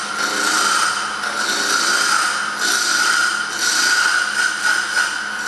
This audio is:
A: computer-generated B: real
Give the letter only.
B